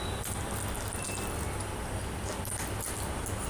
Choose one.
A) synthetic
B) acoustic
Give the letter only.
B